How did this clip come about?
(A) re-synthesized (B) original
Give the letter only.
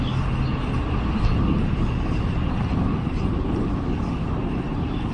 B